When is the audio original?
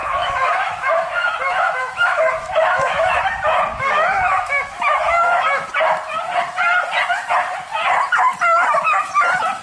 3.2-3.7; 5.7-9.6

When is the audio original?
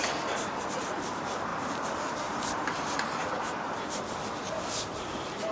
0.0-1.5; 4.8-5.5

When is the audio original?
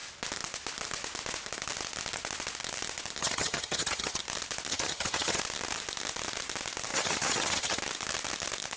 0.0-3.2; 4.2-4.7; 5.4-6.9; 7.8-8.8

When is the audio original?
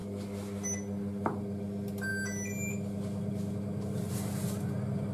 0.0-5.1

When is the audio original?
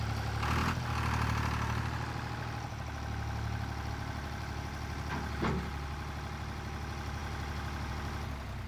0.0-8.7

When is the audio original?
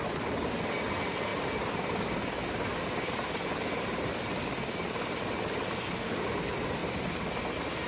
0.0-7.9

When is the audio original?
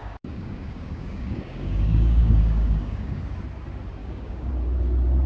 3.2-4.0; 4.5-5.3